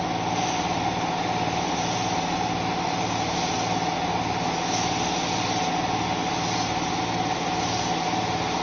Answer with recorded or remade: recorded